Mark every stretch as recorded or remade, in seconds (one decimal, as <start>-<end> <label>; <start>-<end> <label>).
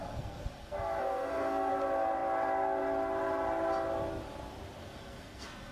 0.0-1.7 remade; 1.7-4.8 recorded; 4.8-5.7 remade